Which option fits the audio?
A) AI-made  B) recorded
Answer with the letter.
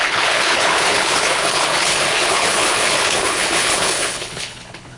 A